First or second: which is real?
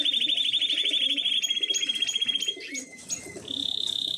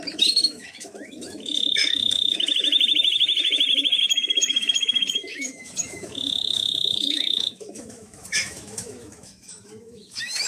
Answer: first